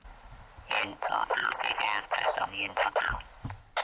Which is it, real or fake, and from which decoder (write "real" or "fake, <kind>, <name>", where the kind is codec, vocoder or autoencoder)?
fake, vocoder, BigVGAN v2